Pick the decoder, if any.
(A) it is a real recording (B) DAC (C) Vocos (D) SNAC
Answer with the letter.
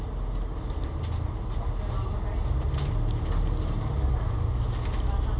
A